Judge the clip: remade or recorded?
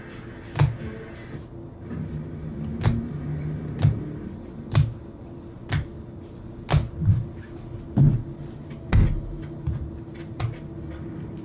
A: recorded